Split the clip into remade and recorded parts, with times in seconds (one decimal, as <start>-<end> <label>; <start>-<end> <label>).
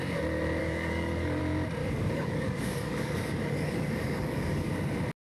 0.0-0.6 recorded; 0.6-1.4 remade; 1.4-1.8 recorded; 1.8-4.7 remade; 4.7-5.4 recorded